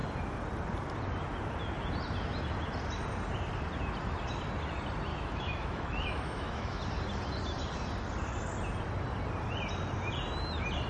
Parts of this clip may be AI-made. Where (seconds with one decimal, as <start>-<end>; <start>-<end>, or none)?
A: 5.1-6.8